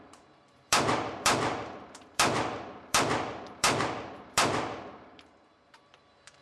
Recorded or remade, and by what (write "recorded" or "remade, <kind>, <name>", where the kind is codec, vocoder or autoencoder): remade, vocoder, BigVGAN v2